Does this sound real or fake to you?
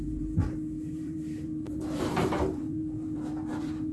fake